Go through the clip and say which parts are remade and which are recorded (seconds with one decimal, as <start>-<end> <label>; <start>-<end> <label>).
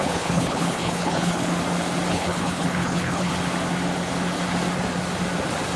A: 0.0-1.5 remade; 1.5-2.1 recorded; 2.1-3.3 remade; 3.3-5.8 recorded